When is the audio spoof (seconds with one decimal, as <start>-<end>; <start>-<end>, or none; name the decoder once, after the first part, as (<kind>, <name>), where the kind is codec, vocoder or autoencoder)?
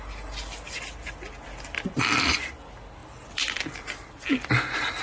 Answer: none